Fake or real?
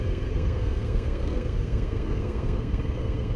fake